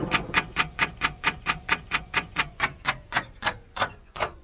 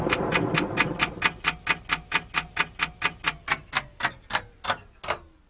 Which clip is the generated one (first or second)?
first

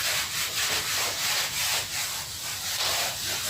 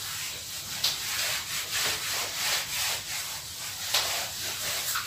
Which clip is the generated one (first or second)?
second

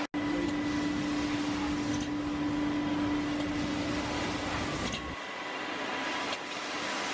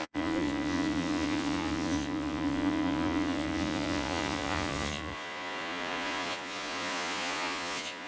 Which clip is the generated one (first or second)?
second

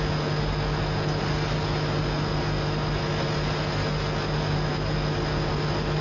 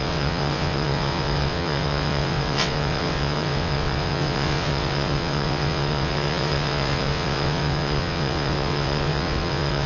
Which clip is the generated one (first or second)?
second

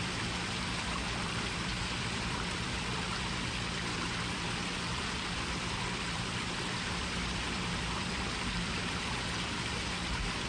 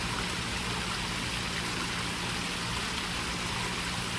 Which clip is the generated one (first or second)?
first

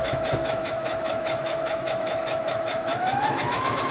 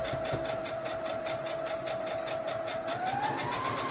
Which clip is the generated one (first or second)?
first